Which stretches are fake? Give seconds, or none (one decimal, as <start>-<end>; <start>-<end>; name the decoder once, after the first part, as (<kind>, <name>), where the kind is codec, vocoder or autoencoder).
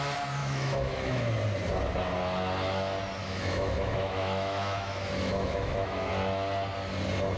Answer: 0.4-1.3 (autoencoder, DAC-VAE); 3.2-6.1